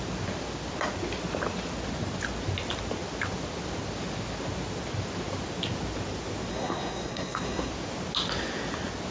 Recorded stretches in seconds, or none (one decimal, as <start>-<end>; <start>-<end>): 0.0-6.5; 7.7-9.1